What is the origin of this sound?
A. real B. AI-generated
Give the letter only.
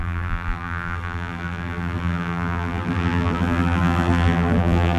B